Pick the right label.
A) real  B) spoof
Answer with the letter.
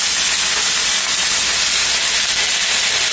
A